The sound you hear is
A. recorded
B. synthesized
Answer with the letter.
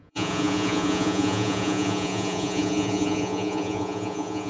B